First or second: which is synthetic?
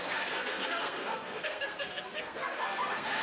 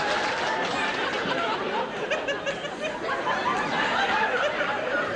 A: first